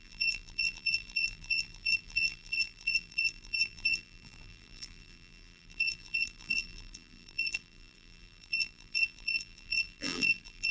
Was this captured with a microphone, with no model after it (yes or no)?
no